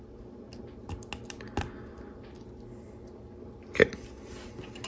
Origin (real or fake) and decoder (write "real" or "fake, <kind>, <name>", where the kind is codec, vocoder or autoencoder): real